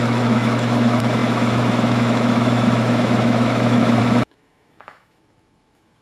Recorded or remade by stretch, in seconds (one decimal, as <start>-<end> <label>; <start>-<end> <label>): 0.0-6.0 remade